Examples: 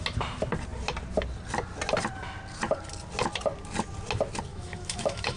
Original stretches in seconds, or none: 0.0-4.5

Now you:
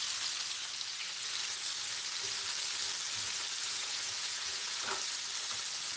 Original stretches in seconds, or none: 0.0-3.6; 4.8-6.0

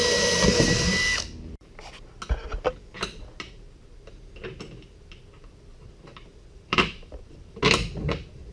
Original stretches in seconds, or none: 0.0-6.3; 7.6-8.5

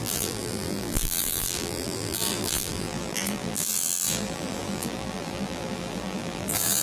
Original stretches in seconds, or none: none

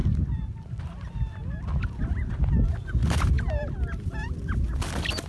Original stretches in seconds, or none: 0.0-5.3